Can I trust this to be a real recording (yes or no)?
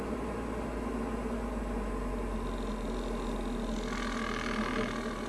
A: yes